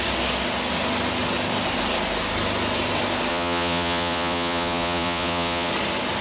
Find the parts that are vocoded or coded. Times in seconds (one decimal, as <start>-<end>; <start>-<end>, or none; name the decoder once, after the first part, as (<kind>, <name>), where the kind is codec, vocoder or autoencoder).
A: 3.3-5.7 (vocoder, Vocos)